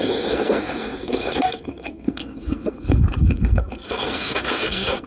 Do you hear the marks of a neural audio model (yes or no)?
yes